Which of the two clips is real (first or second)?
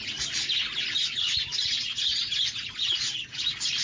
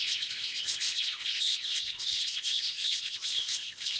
first